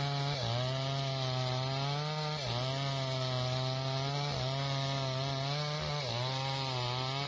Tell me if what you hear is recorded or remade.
recorded